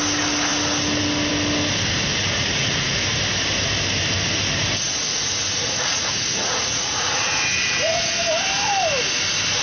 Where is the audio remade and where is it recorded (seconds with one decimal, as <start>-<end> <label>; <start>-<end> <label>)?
0.0-2.1 recorded; 2.1-3.0 remade; 3.0-5.6 recorded; 5.6-8.1 remade; 8.1-9.6 recorded